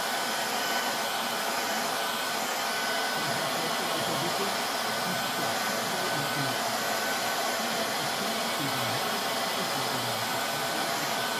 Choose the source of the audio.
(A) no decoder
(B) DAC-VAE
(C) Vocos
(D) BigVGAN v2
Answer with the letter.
A